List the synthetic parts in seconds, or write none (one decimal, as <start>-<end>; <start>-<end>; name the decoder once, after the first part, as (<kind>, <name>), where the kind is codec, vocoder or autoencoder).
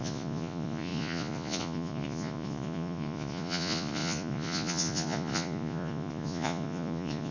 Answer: 0.0-7.3 (vocoder, Vocos)